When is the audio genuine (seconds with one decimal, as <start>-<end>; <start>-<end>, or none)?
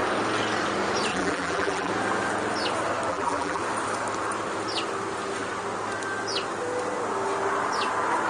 0.0-1.1; 1.9-3.1; 3.6-8.3